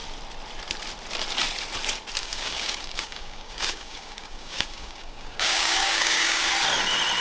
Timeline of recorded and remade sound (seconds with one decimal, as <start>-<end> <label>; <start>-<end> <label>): 0.0-2.2 recorded; 2.2-6.5 remade; 6.5-7.2 recorded